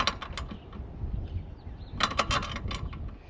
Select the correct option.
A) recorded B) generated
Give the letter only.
A